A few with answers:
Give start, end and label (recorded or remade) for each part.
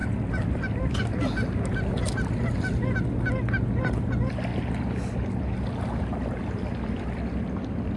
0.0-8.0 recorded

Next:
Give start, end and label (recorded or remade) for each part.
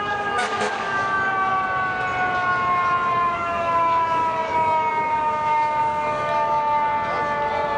0.0-1.5 remade; 1.5-3.1 recorded; 3.1-6.9 remade; 6.9-7.8 recorded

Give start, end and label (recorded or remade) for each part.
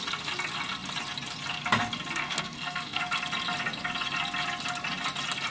0.0-2.2 recorded; 2.2-3.0 remade; 3.0-5.5 recorded